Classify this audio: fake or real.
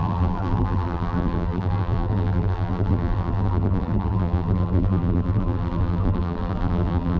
fake